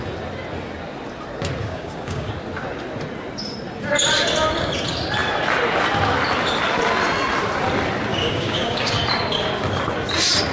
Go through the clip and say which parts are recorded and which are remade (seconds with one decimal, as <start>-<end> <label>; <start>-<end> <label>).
0.0-1.6 recorded; 1.6-2.3 remade; 2.3-8.1 recorded; 8.1-8.9 remade; 8.9-10.5 recorded